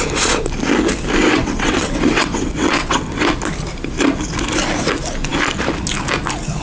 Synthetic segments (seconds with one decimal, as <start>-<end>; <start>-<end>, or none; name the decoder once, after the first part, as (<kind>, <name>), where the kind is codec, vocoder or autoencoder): 1.2-3.0 (vocoder, WaveNeXt)